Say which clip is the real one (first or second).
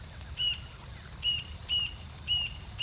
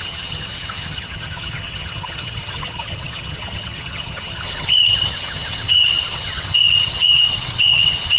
first